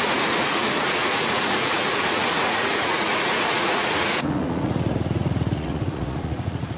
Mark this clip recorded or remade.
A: remade